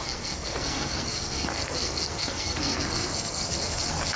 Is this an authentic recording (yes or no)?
no